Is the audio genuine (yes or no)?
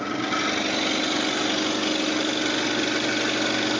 yes